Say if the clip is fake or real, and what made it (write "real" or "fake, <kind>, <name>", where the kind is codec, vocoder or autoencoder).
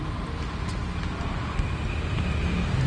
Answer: real